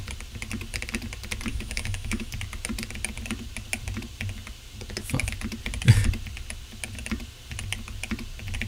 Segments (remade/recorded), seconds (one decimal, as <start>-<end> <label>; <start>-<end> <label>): 0.0-1.5 recorded; 1.5-2.3 remade; 2.3-8.7 recorded